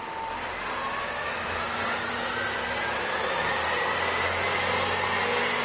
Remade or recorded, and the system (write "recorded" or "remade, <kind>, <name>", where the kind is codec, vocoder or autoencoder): recorded